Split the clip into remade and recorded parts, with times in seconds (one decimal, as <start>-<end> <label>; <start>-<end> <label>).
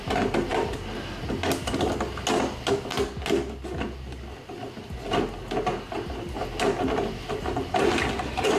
0.0-8.6 recorded